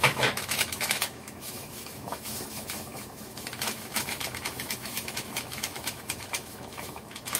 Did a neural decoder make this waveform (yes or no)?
yes